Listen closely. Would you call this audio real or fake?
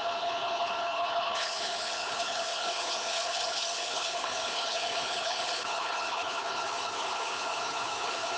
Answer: fake